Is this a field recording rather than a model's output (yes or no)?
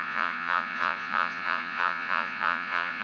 no